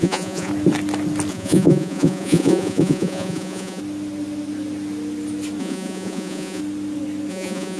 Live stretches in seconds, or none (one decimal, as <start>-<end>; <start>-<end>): 0.5-1.3; 3.8-5.6; 6.6-7.3